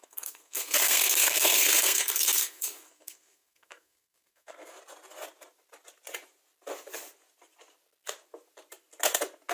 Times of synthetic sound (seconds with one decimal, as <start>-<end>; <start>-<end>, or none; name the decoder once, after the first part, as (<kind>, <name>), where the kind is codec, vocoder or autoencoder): 0.0-4.8 (codec, SNAC)

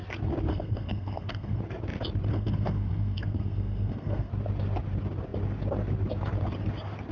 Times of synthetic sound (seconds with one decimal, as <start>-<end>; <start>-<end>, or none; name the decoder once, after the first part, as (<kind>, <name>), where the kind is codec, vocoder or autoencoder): 0.5-1.6 (codec, SNAC); 2.3-4.3

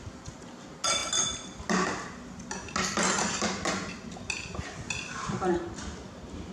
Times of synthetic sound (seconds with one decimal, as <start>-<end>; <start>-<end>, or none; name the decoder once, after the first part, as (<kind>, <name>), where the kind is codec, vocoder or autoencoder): none

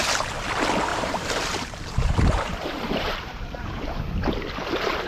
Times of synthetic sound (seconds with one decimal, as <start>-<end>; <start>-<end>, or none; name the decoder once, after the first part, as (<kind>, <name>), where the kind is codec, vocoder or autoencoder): 0.9-4.0 (vocoder, BigVGAN v2)

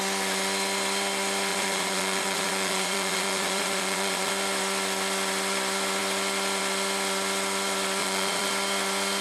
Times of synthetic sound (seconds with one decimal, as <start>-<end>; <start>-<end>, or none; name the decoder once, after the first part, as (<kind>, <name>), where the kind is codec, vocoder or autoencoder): 1.5-4.3 (vocoder, Vocos); 8.0-8.5